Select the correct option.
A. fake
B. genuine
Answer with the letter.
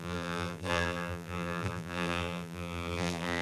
A